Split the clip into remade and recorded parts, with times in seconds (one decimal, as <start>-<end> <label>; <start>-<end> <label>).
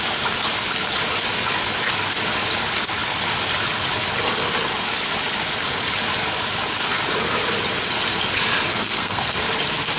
0.0-8.7 recorded; 8.7-9.4 remade; 9.4-10.0 recorded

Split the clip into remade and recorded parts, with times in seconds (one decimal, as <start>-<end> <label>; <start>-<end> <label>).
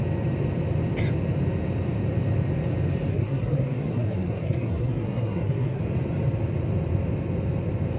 0.0-3.1 recorded; 3.1-5.8 remade; 5.8-8.0 recorded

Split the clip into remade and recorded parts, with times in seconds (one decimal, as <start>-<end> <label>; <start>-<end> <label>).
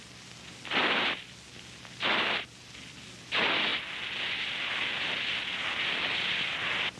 0.0-7.0 recorded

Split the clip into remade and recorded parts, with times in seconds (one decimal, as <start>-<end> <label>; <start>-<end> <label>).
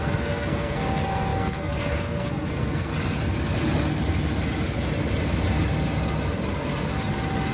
0.0-2.9 remade; 2.9-7.5 recorded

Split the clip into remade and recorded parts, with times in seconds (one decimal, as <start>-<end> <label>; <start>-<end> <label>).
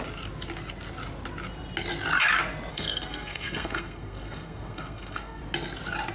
0.0-2.7 recorded; 2.7-5.4 remade; 5.4-6.1 recorded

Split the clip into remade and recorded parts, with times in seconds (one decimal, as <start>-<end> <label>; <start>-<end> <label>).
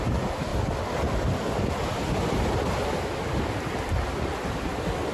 0.0-5.1 recorded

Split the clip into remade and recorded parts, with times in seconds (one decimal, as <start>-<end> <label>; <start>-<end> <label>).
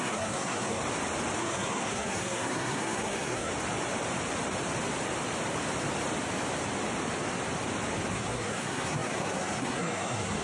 0.0-0.8 remade; 0.8-1.4 recorded; 1.4-3.5 remade; 3.5-8.1 recorded; 8.1-10.4 remade